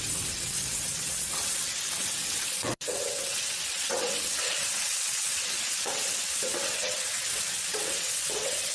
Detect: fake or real fake